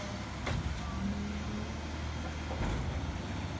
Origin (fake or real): real